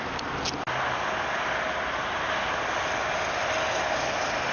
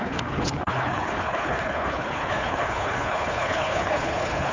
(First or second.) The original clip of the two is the first